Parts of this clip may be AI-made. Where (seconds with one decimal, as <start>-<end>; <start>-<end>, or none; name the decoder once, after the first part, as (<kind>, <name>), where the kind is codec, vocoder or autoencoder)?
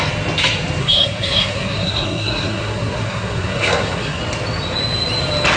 0.8-4.2 (codec, SNAC)